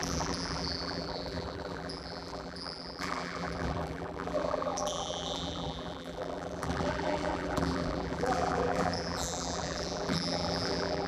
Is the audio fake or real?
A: fake